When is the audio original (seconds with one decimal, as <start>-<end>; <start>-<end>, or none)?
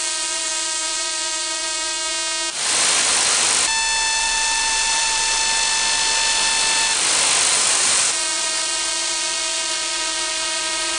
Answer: 2.1-4.2; 5.4-7.5